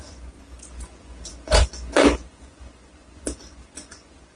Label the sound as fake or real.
fake